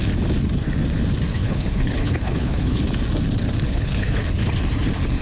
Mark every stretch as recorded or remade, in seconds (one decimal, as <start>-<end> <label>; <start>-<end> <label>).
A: 0.0-1.3 recorded; 1.3-2.8 remade; 2.8-3.7 recorded; 3.7-4.2 remade; 4.2-5.2 recorded